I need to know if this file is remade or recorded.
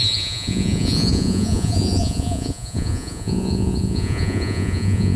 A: remade